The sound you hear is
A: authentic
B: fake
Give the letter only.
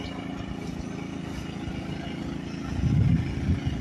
A